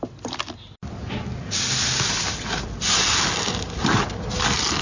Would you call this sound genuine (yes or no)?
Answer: yes